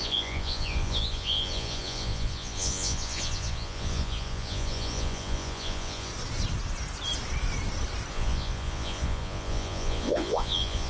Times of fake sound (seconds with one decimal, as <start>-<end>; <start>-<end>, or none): 0.0-6.1; 8.1-10.9